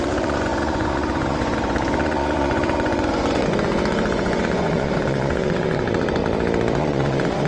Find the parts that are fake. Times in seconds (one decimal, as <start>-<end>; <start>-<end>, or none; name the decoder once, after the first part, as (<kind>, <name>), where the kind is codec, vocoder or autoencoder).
0.0-6.2 (vocoder, Vocos); 6.8-7.5